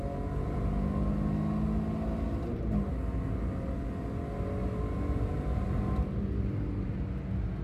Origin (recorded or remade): recorded